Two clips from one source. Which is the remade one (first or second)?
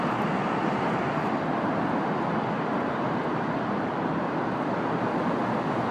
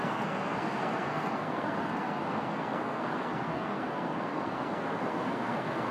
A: second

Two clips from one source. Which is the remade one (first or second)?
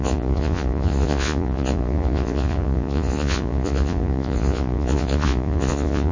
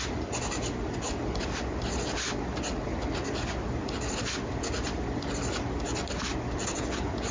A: first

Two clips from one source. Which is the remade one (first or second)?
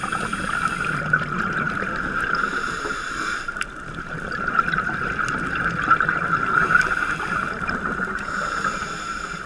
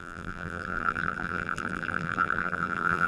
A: second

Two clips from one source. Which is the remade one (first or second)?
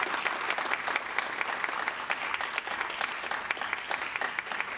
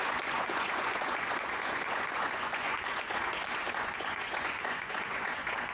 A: second